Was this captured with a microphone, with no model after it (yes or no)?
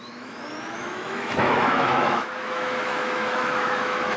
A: no